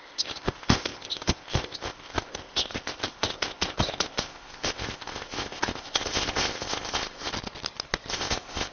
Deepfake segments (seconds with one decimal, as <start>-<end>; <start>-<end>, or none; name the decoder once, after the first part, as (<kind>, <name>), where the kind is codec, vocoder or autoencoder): 0.0-7.3 (codec, ZipCodec); 8.1-8.7